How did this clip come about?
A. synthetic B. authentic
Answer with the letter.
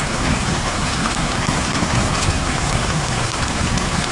A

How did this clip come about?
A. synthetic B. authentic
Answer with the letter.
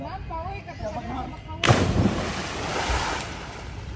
A